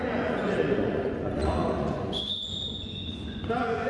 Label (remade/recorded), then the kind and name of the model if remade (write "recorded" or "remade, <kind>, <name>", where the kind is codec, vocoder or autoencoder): remade, vocoder, Vocos